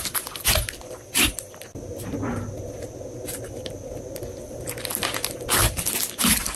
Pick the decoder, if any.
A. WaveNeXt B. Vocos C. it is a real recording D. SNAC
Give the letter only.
C